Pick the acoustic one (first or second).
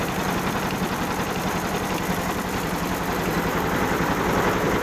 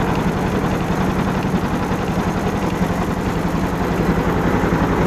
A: second